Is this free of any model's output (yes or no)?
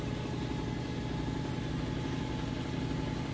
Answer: yes